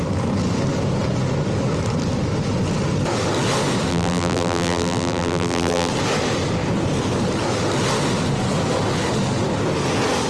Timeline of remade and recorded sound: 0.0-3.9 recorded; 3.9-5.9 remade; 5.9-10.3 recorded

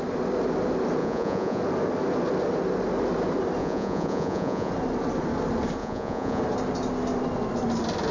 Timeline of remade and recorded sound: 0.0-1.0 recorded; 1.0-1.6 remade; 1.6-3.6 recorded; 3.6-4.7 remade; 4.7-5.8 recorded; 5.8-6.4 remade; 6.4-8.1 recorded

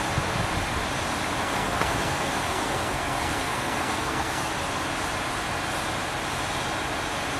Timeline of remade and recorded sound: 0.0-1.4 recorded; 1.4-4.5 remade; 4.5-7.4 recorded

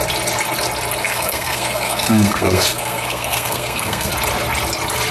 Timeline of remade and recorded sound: 0.0-1.0 recorded; 1.0-4.1 remade; 4.1-5.1 recorded

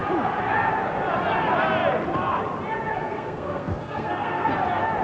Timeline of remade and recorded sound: 0.0-2.9 recorded; 2.9-4.5 remade; 4.5-5.0 recorded